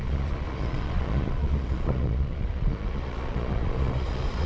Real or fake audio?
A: fake